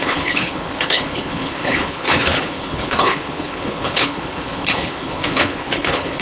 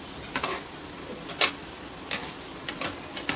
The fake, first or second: first